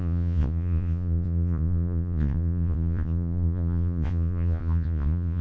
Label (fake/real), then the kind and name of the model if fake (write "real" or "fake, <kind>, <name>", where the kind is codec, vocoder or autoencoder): fake, vocoder, Vocos